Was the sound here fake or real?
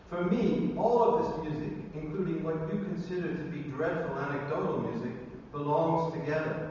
real